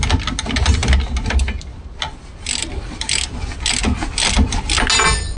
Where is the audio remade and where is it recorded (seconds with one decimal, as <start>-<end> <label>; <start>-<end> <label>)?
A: 0.0-5.4 recorded